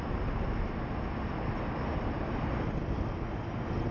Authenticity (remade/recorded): recorded